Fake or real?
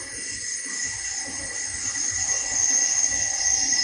real